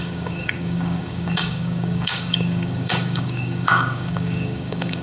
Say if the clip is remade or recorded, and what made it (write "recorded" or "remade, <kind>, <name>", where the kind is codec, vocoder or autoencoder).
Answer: remade, codec, DAC